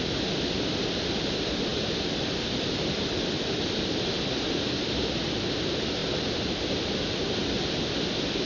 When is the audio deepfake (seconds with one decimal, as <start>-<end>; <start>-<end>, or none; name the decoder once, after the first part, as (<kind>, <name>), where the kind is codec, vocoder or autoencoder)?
none